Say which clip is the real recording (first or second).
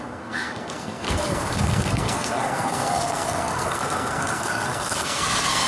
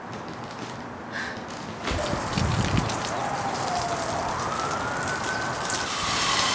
second